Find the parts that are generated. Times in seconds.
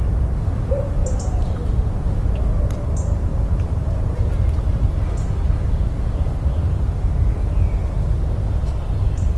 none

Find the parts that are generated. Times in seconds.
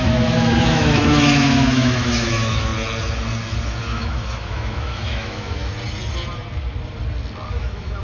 0.0-2.7 (autoencoder, DAC-VAE); 3.8-5.7; 7.5-8.0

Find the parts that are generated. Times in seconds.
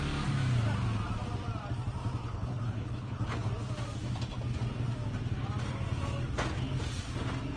2.2-3.5 (codec, HILCodec)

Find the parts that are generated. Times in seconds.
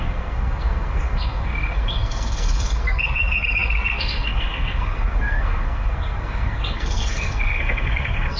0.0-8.4 (codec, SNAC)